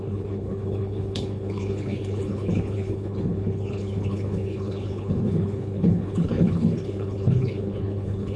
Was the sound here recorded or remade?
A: remade